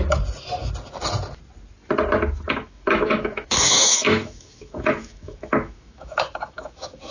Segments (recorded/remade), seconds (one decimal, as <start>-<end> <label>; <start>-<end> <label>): 0.0-2.6 recorded; 2.6-7.1 remade